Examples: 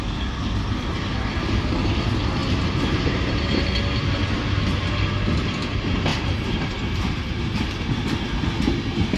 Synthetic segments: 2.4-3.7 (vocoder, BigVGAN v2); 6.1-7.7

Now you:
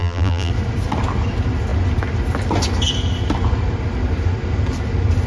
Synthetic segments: 0.0-0.5 (vocoder, BigVGAN v2)